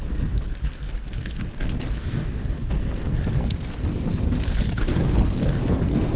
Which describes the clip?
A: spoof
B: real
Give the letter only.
A